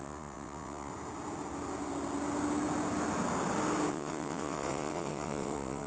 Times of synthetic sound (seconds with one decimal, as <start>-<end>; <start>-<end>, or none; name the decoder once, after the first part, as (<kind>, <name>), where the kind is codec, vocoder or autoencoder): 0.0-0.9 (vocoder, WaveNeXt); 3.9-5.9